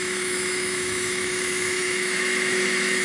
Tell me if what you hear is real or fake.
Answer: fake